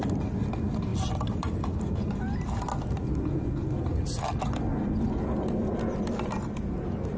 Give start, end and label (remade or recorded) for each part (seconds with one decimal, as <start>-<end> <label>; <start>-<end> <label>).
0.0-7.2 recorded